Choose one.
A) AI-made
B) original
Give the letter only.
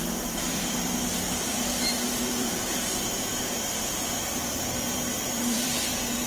A